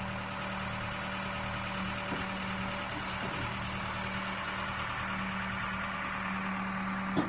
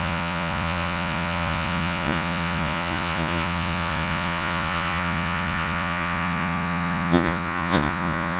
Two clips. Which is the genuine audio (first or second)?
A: first